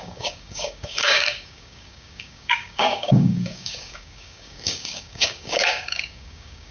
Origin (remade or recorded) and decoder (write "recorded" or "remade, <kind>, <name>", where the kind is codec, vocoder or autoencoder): remade, codec, DAC